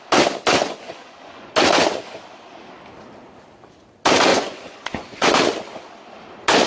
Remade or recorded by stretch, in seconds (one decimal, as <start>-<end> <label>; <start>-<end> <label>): 0.0-0.6 recorded; 0.6-1.5 remade; 1.5-4.3 recorded; 4.3-5.3 remade; 5.3-6.7 recorded